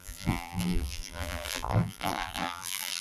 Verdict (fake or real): fake